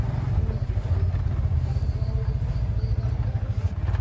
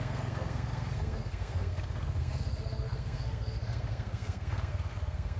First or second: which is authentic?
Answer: first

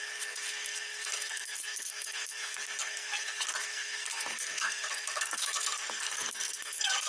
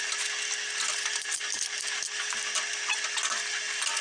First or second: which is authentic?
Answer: second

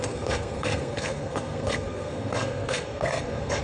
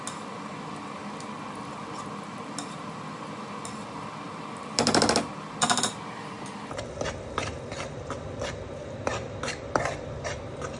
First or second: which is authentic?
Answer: second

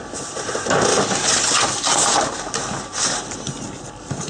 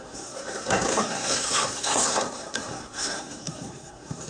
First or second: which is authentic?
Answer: first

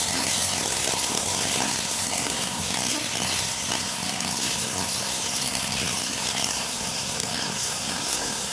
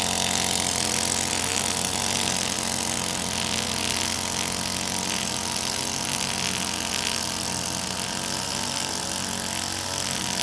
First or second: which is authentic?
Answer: second